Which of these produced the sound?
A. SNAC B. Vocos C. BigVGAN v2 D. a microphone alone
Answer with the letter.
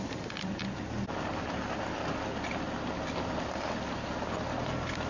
D